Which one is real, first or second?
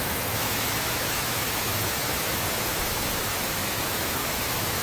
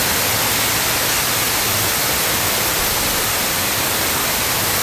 second